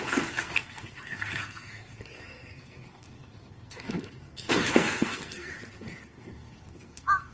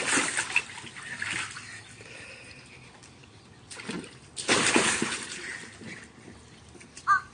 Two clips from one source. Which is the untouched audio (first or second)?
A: second